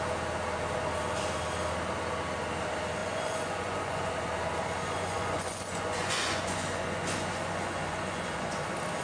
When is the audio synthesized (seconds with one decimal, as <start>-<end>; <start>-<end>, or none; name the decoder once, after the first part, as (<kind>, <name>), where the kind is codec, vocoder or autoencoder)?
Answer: 3.0-4.1 (vocoder, Vocos); 4.8-8.6

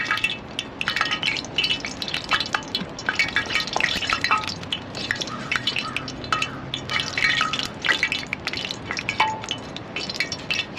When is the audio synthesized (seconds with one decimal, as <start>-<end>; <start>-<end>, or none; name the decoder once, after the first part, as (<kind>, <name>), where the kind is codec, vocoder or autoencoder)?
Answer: 3.0-5.7 (vocoder, BigVGAN v2)

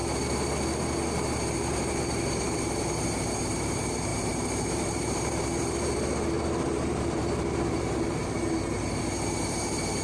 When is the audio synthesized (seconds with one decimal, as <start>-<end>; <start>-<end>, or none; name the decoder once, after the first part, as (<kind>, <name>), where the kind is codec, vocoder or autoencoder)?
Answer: 1.1-10.0 (vocoder, BigVGAN v2)

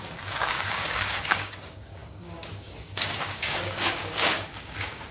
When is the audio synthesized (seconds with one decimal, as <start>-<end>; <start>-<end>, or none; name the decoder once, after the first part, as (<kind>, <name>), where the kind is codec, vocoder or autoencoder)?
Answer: 0.0-5.1 (codec, DAC)

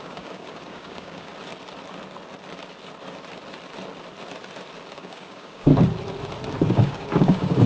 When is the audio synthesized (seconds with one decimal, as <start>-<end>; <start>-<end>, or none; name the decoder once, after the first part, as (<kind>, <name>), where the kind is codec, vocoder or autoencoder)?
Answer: 0.0-1.3 (codec, DAC); 4.9-5.7; 6.7-7.7

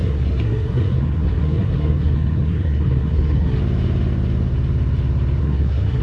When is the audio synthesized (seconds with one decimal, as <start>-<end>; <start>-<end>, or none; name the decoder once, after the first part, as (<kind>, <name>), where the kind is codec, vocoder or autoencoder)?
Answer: 0.0-3.6 (codec, SNAC); 5.4-6.0

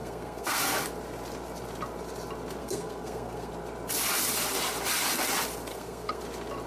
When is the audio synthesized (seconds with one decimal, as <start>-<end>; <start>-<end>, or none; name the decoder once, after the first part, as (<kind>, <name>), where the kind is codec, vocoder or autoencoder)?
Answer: 0.0-0.6 (codec, SNAC); 2.6-3.5; 5.7-6.2